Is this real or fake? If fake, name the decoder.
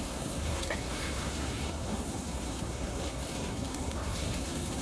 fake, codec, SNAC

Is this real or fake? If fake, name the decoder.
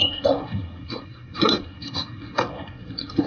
fake, codec, SNAC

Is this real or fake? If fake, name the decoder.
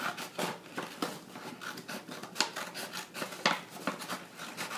real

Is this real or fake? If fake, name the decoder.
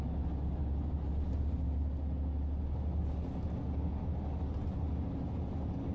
real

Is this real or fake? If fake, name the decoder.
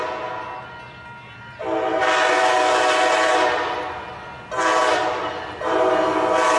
real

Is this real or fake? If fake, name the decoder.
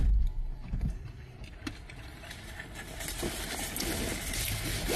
real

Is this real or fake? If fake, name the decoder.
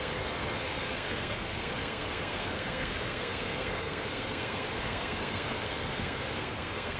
fake, codec, SNAC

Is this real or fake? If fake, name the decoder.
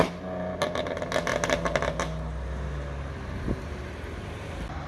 real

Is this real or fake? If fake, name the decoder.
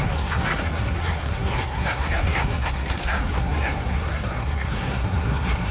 fake, codec, SNAC